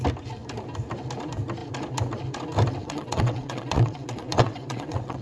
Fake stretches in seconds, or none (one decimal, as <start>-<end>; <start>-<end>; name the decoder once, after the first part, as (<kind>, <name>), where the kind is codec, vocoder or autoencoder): 2.8-5.2 (vocoder, WaveNeXt)